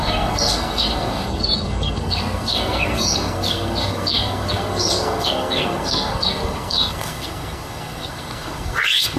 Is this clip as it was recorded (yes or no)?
no